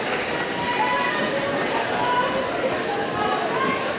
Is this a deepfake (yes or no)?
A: yes